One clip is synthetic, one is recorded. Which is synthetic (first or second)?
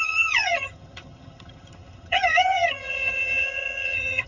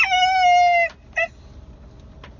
first